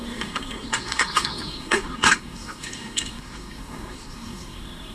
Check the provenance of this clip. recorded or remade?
remade